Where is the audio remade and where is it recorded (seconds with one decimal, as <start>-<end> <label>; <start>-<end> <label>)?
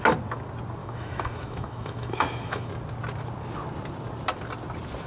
0.0-0.8 recorded; 0.8-2.7 remade; 2.7-5.1 recorded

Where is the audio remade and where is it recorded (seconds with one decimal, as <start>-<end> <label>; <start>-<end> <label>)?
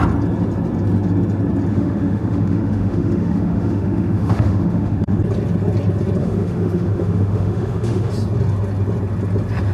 0.0-1.7 recorded; 1.7-5.2 remade; 5.2-6.2 recorded; 6.2-8.1 remade; 8.1-9.7 recorded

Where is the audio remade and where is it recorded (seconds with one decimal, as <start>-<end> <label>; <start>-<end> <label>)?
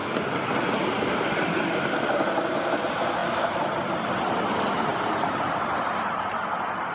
0.0-4.9 recorded; 4.9-6.1 remade; 6.1-6.9 recorded